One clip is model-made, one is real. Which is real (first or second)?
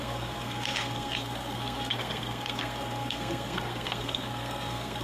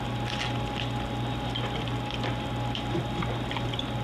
second